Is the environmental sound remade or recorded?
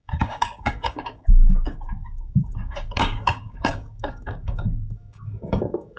remade